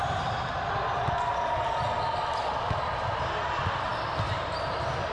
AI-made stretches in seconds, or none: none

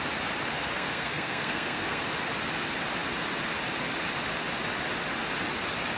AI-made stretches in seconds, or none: 0.5-2.0 (codec, SNAC)

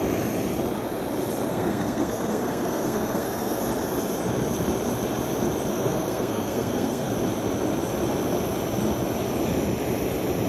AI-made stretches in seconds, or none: 1.5-3.6 (codec, SNAC); 5.7-7.1

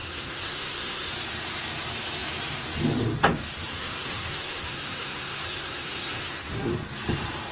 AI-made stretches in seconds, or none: 0.0-1.1 (codec, SNAC); 3.7-6.7

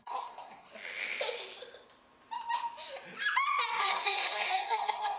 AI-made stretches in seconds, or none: 0.0-0.7 (codec, SNAC); 3.8-5.2

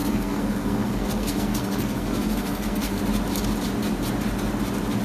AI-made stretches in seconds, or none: 0.0-3.0 (codec, SNAC)

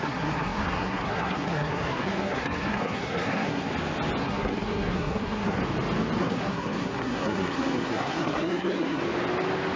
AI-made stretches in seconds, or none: 0.0-3.7 (codec, SNAC); 4.2-5.6; 6.2-9.0